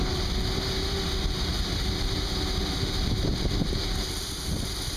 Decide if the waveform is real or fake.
real